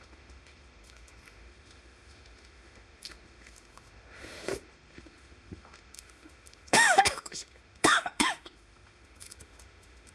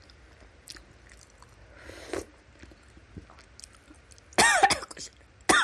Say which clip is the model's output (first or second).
first